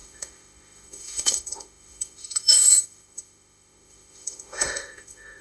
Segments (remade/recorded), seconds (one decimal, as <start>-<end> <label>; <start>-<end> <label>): 0.0-5.4 remade